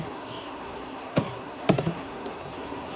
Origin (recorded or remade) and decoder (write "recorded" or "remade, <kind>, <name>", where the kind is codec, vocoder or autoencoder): remade, codec, SNAC